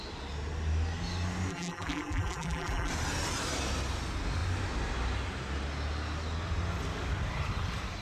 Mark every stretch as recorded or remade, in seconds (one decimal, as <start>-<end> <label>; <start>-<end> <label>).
0.0-1.5 recorded; 1.5-2.9 remade; 2.9-8.0 recorded